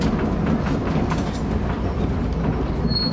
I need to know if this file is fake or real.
real